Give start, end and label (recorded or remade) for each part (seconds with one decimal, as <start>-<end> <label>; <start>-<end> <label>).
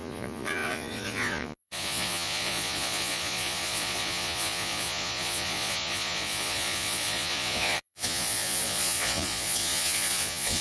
0.0-10.6 remade